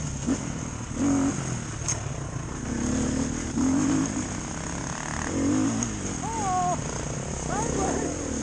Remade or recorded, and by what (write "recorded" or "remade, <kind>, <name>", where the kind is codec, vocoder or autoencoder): recorded